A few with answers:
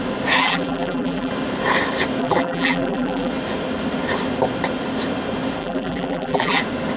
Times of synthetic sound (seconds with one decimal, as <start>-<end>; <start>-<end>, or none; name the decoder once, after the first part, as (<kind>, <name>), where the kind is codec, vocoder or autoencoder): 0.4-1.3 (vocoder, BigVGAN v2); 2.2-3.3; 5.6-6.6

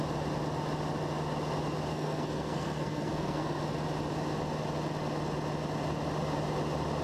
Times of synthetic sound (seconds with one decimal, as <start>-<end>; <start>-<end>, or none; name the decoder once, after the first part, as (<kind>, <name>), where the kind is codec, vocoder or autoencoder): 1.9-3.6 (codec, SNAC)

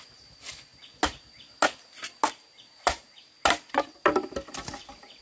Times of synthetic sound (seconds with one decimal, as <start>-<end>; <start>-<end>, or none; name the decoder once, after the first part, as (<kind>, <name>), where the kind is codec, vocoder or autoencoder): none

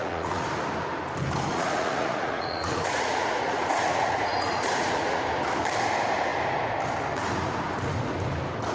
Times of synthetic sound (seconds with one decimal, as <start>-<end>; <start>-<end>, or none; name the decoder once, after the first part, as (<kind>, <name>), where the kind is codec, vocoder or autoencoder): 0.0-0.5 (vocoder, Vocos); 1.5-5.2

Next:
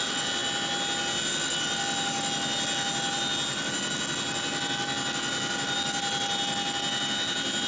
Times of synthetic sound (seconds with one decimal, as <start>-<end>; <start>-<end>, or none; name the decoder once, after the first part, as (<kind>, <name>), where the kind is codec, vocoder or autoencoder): none

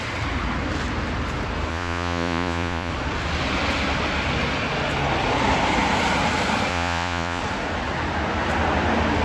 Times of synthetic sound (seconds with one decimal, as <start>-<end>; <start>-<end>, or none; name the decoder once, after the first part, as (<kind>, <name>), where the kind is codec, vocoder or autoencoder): 1.7-2.9 (vocoder, Vocos); 6.7-7.4